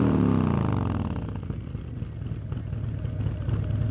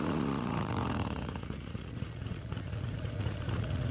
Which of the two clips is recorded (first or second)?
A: first